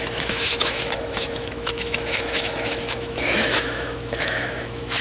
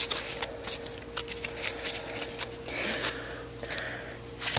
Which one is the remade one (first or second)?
first